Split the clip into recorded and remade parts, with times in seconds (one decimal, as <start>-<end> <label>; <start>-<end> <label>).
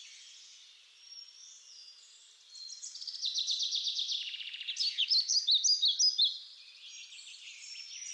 0.0-8.1 recorded